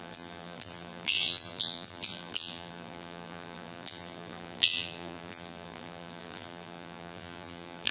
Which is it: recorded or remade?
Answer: remade